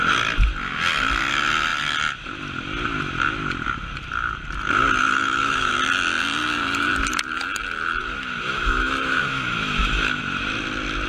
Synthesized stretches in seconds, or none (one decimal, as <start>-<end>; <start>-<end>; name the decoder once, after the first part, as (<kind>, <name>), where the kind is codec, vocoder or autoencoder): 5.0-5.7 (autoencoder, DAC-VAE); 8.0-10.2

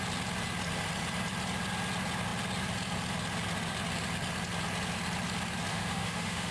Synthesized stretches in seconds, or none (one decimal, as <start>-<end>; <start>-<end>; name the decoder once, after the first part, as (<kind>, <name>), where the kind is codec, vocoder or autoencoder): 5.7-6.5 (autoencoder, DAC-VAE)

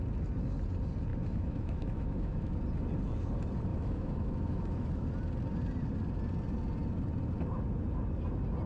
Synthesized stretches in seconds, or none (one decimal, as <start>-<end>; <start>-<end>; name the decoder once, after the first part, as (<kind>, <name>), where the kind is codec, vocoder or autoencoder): 1.1-2.5 (autoencoder, DAC-VAE); 3.7-5.1

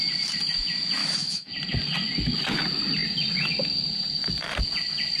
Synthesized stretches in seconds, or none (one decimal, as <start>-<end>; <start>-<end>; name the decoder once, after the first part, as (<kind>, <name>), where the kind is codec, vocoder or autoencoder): 1.0-1.5 (autoencoder, DAC-VAE)